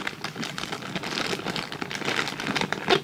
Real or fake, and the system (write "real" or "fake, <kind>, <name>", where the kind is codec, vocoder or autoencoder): real